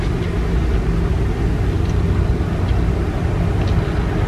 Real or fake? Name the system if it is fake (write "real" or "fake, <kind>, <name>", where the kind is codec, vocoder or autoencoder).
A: real